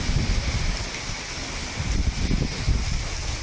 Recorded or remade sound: recorded